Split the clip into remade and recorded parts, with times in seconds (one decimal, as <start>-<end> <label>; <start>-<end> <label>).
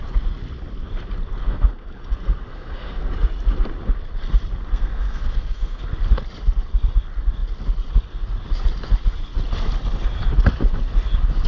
0.0-1.4 recorded; 1.4-3.1 remade; 3.1-4.7 recorded; 4.7-5.8 remade; 5.8-11.5 recorded